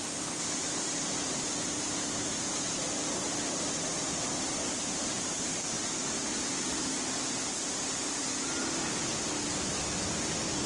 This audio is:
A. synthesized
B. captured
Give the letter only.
B